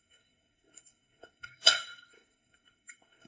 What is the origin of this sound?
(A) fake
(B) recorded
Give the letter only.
A